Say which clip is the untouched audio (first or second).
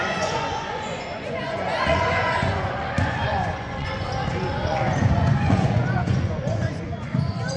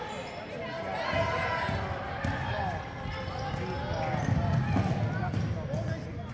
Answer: second